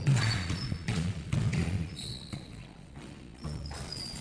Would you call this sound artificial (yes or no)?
yes